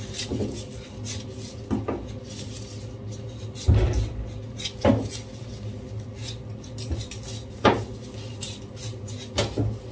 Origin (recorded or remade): recorded